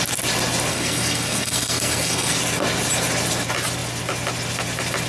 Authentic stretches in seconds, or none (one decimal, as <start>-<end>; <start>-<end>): 0.0-0.7; 2.4-5.1